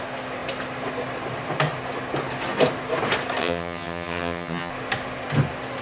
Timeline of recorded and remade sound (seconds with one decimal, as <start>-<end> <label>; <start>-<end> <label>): 0.0-3.4 recorded; 3.4-4.7 remade; 4.7-5.8 recorded